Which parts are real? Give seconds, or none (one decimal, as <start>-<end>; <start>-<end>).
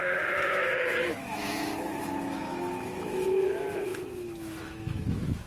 none